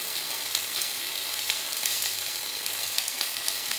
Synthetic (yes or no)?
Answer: yes